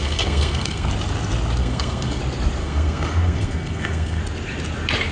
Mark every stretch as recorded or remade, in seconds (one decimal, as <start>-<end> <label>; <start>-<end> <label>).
0.0-0.9 remade; 0.9-1.6 recorded; 1.6-2.2 remade; 2.2-2.6 recorded; 2.6-4.2 remade; 4.2-5.1 recorded